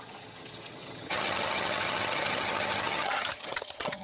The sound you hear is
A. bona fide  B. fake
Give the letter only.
B